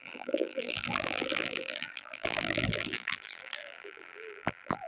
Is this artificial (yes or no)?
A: yes